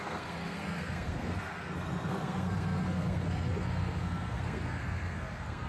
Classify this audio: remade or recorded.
remade